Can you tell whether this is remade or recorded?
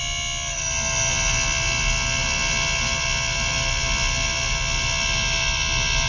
recorded